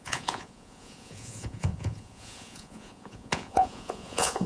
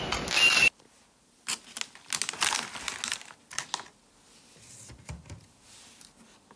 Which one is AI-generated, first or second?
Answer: first